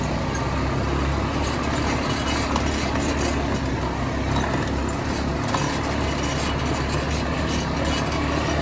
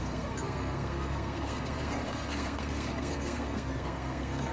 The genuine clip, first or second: first